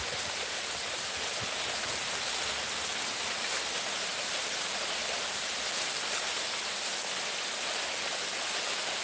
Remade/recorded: recorded